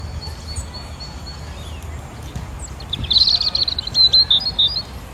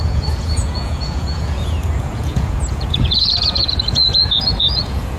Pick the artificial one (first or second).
second